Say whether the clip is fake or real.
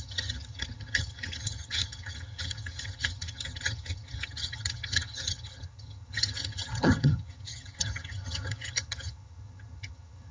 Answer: fake